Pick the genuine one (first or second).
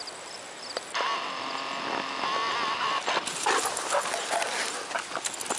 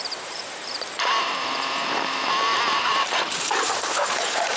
first